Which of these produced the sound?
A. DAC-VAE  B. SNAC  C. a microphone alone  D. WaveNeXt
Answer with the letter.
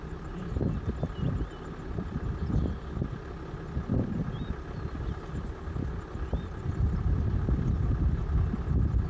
C